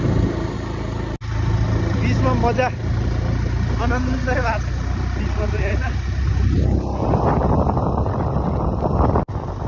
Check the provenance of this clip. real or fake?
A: real